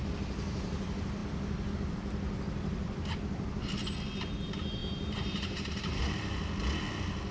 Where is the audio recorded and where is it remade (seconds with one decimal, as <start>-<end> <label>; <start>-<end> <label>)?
0.0-4.8 recorded; 4.8-6.0 remade; 6.0-7.3 recorded